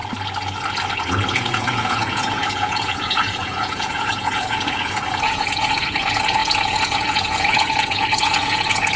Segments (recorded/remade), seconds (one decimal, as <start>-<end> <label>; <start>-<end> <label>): 0.0-1.3 recorded; 1.3-9.0 remade